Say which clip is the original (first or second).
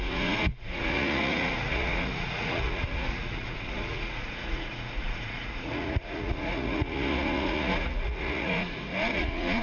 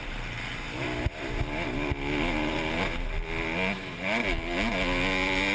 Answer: second